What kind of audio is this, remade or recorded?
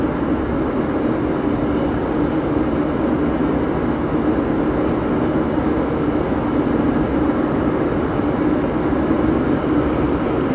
recorded